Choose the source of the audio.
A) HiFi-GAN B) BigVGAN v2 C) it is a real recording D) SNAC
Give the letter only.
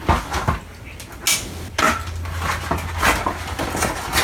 C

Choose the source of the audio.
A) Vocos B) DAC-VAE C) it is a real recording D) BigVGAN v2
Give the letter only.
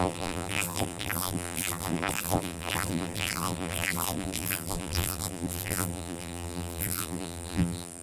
D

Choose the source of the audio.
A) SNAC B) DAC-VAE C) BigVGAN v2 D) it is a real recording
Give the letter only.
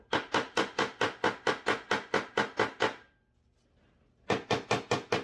D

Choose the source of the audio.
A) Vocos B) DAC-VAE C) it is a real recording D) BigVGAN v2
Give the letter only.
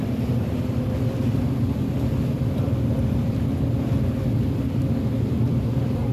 D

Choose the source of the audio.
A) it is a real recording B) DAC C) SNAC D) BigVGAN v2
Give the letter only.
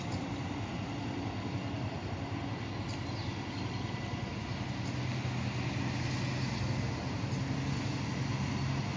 A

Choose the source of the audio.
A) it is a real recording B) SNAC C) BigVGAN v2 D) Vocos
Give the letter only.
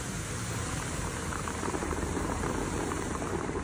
C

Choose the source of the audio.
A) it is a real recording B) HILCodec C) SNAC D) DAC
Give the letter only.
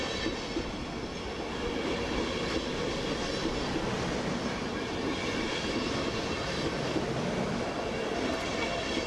A